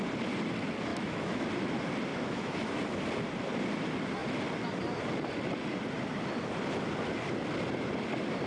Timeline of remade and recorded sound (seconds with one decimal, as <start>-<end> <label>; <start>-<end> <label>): 0.0-0.9 recorded; 0.9-1.5 remade; 1.5-2.1 recorded; 2.1-2.8 remade; 2.8-8.5 recorded